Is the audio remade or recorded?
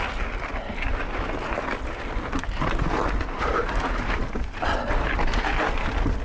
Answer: recorded